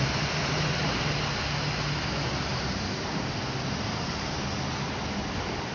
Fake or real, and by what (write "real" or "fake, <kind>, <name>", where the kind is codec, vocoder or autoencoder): real